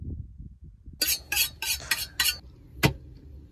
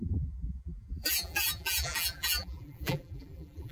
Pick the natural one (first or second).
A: first